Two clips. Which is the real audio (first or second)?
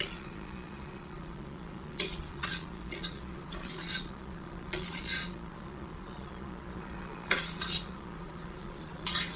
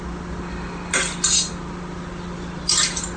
second